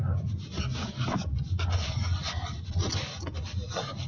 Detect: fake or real real